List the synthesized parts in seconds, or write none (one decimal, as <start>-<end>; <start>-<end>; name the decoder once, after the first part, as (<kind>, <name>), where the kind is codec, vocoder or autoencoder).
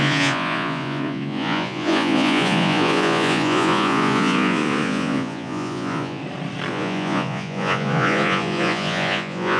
0.0-6.2 (vocoder, Vocos); 6.7-9.6